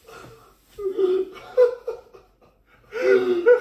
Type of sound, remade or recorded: recorded